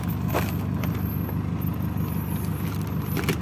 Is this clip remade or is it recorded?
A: recorded